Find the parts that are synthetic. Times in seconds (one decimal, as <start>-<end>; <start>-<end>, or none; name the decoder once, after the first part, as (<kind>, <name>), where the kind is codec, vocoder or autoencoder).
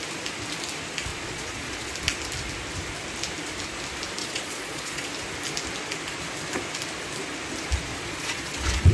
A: 1.1-1.9 (vocoder, Vocos); 4.2-5.1; 7.9-8.9